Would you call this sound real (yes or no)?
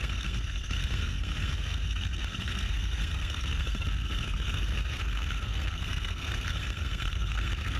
no